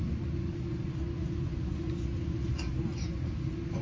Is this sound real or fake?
real